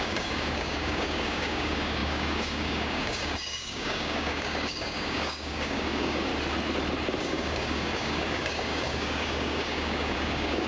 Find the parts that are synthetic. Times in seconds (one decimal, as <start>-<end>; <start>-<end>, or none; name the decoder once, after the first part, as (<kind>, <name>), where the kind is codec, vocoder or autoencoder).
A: 0.0-6.3 (codec, DAC); 7.2-10.7